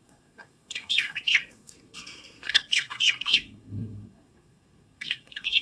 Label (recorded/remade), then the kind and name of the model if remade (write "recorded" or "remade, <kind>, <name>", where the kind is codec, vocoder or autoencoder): remade, codec, SNAC